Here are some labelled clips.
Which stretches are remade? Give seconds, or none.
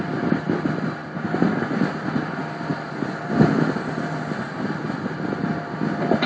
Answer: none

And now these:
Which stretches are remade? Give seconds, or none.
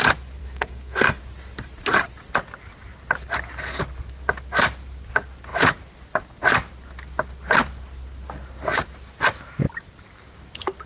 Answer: 0.4-1.2 (codec, SNAC)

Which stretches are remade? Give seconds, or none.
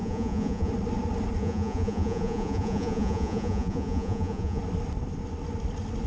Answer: 0.0-0.7 (vocoder, Vocos); 1.4-4.6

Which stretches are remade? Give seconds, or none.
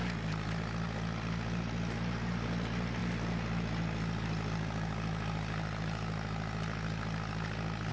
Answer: none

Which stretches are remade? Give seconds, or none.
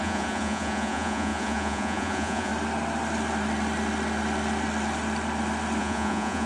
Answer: 0.0-2.5 (vocoder, Vocos); 5.8-6.5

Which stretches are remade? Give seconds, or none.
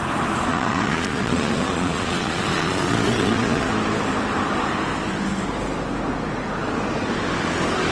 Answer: 0.5-3.7 (vocoder, Vocos)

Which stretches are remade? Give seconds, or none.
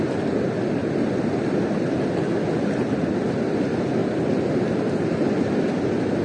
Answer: none